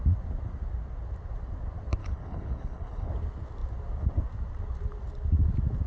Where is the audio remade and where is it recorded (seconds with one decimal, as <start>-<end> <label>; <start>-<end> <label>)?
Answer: 0.0-2.0 recorded; 2.0-3.1 remade; 3.1-5.9 recorded